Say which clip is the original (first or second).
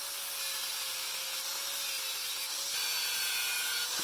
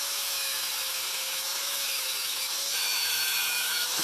first